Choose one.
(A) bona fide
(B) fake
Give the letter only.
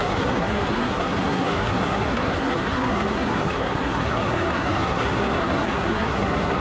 B